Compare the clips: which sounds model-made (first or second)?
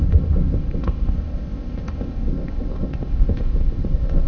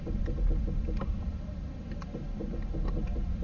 first